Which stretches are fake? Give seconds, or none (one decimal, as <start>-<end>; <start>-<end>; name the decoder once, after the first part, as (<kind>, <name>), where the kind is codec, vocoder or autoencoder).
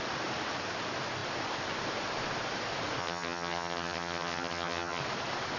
3.0-5.0 (vocoder, HiFi-GAN)